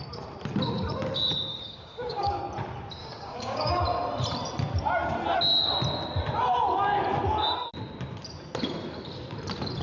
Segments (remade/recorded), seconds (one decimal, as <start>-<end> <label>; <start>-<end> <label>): 0.0-1.5 recorded; 1.5-2.4 remade; 2.4-3.0 recorded; 3.0-3.8 remade; 3.8-9.8 recorded